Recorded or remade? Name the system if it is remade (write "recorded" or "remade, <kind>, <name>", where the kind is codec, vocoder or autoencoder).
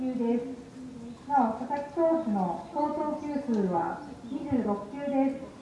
recorded